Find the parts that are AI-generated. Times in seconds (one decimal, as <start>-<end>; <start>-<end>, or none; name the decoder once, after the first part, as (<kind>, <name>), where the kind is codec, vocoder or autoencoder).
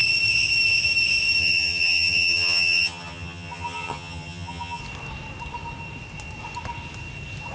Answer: 1.4-4.8 (vocoder, HiFi-GAN)